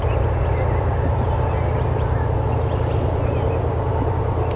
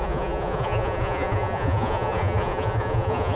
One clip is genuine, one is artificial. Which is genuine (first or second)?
first